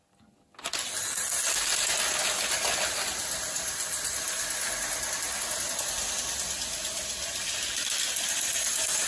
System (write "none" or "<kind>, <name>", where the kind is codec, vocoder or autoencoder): none